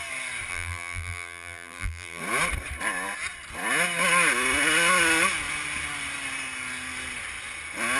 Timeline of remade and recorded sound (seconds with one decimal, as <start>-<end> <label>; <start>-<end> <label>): 0.0-0.5 recorded; 0.5-2.2 remade; 2.2-8.0 recorded